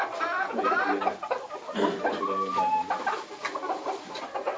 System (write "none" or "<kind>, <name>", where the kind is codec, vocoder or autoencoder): none